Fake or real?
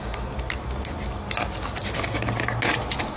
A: real